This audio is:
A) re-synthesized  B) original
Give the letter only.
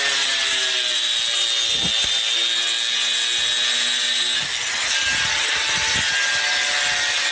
B